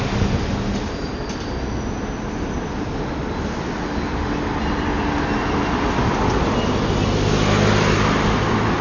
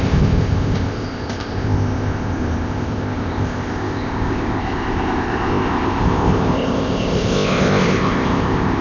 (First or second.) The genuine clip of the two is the first